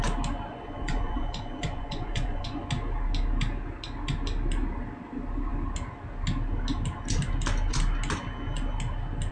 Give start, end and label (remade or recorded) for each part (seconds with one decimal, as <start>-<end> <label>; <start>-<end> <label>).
0.0-0.5 recorded; 0.5-2.6 remade; 2.6-9.3 recorded